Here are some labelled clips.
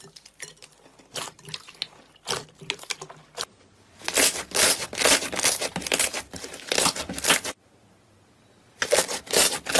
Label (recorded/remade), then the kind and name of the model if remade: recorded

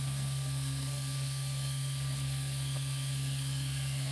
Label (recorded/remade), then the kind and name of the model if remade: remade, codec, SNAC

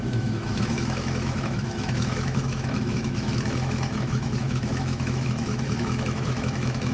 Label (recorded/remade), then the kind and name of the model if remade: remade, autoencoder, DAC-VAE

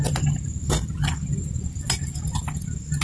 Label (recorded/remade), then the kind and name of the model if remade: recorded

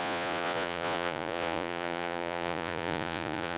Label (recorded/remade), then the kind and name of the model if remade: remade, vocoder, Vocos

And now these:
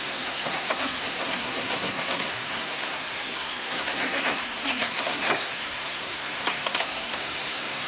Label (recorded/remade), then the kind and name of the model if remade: remade, codec, SNAC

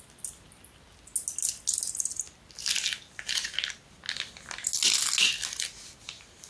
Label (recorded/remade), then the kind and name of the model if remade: recorded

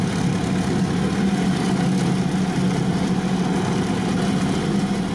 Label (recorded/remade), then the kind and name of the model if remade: recorded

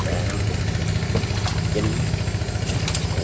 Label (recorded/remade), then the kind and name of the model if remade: recorded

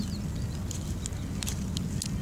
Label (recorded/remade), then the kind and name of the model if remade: recorded